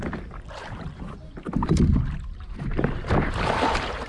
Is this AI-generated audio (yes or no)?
no